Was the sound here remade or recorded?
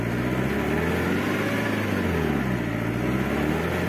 recorded